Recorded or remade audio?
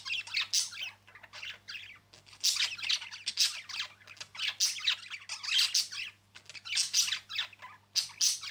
recorded